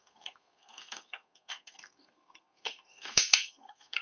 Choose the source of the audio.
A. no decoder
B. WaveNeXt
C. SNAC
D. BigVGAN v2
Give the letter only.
C